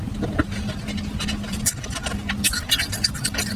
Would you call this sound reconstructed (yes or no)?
no